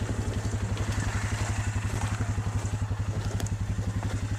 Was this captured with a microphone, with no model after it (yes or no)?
yes